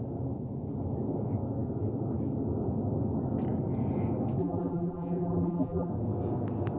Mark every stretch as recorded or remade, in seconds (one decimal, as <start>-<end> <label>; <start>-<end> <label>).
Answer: 0.0-4.4 recorded; 4.4-5.9 remade; 5.9-6.8 recorded